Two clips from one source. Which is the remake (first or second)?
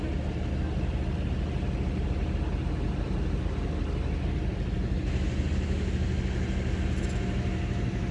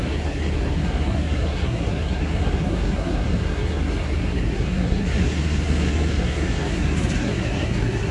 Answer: second